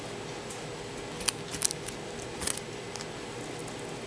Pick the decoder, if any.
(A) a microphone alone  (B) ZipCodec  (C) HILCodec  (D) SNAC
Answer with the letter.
A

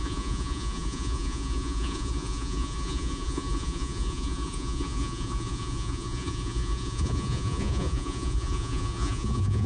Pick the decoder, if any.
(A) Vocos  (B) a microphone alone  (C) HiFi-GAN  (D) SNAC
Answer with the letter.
A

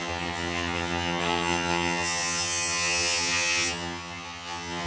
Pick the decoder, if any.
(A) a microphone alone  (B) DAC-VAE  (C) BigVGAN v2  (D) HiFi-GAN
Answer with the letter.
D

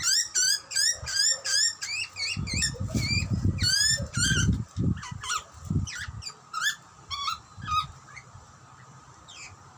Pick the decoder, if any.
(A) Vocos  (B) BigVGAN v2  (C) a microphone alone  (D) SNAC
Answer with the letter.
B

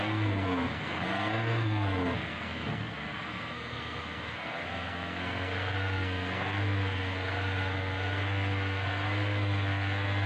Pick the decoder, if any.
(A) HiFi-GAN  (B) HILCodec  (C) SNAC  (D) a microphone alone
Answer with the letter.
C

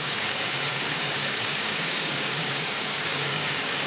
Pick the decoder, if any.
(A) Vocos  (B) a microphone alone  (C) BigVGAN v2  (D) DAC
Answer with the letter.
D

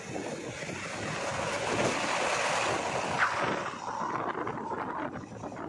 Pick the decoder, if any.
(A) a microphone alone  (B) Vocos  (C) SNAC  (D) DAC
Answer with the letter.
A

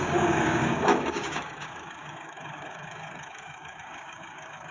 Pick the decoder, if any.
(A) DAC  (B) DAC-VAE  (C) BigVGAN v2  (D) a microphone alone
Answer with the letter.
A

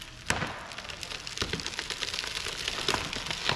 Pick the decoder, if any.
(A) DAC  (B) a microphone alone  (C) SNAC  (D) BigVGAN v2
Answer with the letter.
B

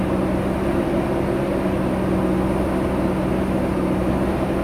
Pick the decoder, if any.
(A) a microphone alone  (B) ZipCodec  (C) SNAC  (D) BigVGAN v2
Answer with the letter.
A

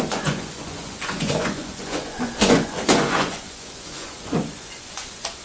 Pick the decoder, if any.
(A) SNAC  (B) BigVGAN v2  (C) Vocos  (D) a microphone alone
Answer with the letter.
C